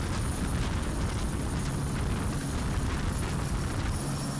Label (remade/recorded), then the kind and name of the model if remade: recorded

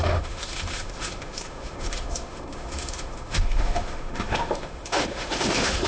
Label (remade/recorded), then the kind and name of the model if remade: remade, autoencoder, DAC-VAE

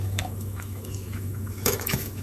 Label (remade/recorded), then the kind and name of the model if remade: remade, autoencoder, DAC-VAE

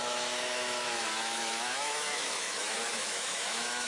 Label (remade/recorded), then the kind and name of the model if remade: remade, autoencoder, DAC-VAE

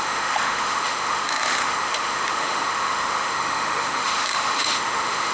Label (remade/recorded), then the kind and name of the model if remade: remade, autoencoder, DAC-VAE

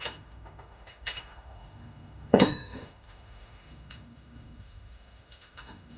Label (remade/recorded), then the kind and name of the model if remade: remade, autoencoder, DAC-VAE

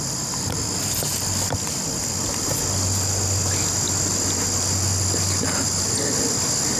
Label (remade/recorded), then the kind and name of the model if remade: recorded